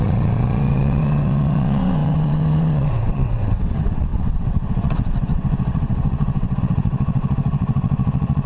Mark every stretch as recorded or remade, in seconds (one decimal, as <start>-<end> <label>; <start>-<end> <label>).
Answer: 0.0-8.5 remade